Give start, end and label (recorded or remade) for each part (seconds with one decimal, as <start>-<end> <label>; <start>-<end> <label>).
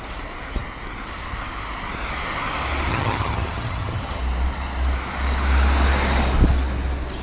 0.0-2.9 recorded; 2.9-4.2 remade; 4.2-7.2 recorded